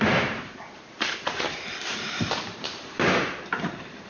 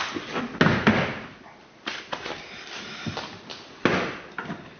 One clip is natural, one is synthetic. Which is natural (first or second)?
second